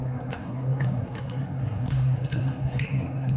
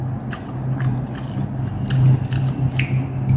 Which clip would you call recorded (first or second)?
second